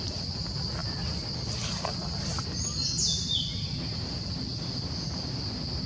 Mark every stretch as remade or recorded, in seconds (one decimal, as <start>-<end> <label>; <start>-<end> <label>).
0.0-5.9 recorded